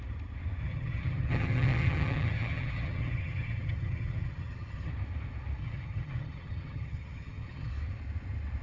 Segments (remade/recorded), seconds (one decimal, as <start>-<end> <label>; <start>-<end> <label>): 0.0-0.6 recorded; 0.6-4.9 remade; 4.9-5.6 recorded; 5.6-7.7 remade; 7.7-8.6 recorded